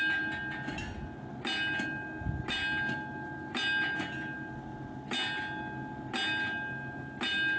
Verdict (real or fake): real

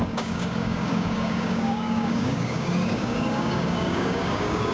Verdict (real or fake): fake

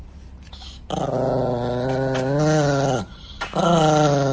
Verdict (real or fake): real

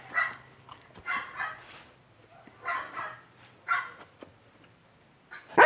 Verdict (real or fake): real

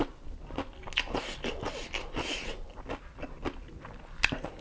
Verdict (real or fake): real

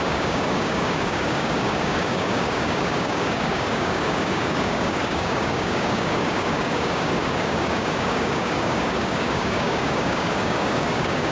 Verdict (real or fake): fake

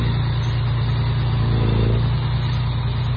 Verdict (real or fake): real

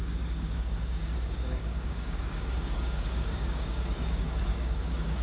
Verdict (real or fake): fake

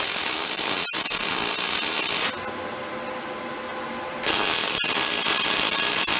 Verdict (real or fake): real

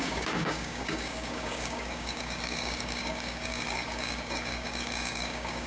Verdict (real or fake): fake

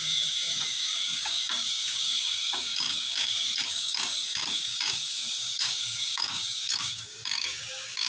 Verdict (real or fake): fake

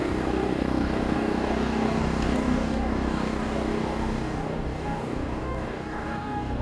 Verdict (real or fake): fake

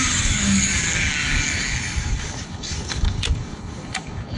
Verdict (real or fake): fake